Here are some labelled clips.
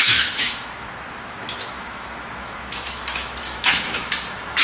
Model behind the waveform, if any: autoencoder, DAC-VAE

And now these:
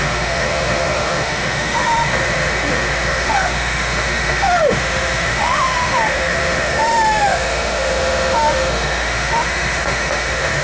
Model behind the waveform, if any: autoencoder, DAC-VAE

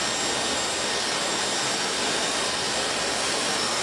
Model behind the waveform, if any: none